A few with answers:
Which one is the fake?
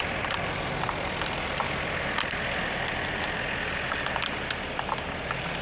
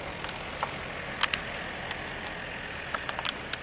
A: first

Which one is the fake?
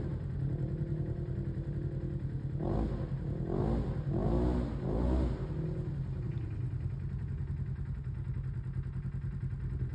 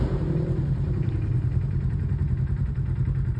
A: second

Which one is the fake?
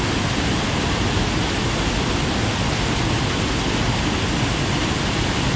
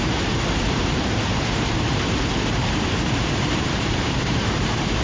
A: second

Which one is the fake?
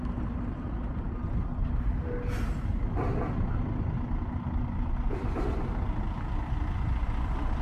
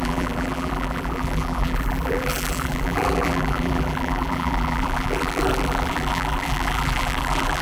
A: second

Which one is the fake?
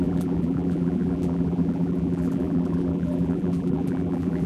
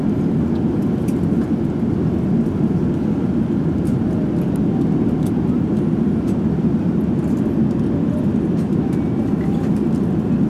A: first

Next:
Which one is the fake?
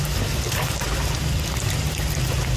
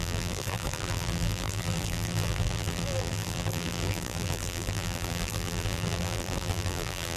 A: second